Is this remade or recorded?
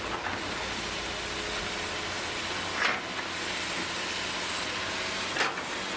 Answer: recorded